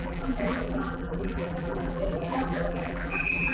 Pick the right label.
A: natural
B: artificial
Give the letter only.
B